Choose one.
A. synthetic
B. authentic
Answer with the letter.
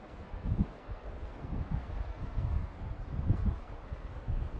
A